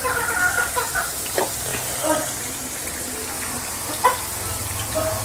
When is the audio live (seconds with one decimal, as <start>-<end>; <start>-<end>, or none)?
0.0-5.2